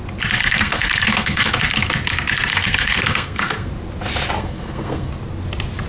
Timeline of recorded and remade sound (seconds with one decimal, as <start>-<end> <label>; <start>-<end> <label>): 0.0-0.4 recorded; 0.4-1.5 remade; 1.5-2.5 recorded; 2.5-3.7 remade; 3.7-4.4 recorded; 4.4-5.1 remade; 5.1-5.9 recorded